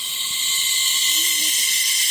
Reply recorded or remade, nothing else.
recorded